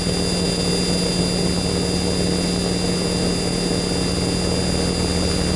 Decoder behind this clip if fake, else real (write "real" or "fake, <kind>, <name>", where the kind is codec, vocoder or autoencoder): real